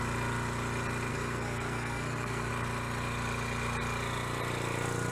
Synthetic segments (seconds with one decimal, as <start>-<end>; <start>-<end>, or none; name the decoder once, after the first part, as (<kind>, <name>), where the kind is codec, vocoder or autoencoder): 1.1-2.5 (codec, SNAC)